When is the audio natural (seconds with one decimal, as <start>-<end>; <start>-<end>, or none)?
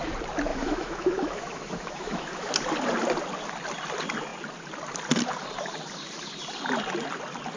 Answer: 0.0-0.5; 2.5-7.6